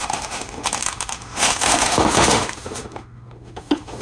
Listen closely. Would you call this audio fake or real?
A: fake